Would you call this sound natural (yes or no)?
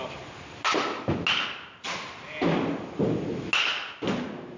yes